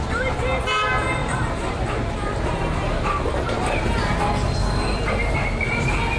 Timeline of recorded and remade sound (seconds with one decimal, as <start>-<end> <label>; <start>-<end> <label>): 0.0-1.2 recorded; 1.2-3.8 remade; 3.8-6.2 recorded